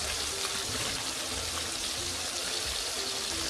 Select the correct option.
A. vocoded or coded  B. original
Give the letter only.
B